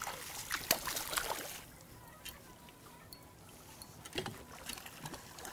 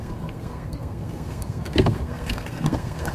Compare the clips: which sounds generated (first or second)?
second